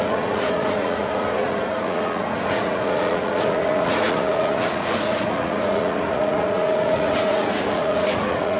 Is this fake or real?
fake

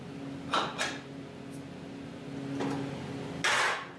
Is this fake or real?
real